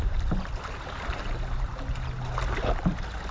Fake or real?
real